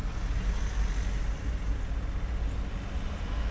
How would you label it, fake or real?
real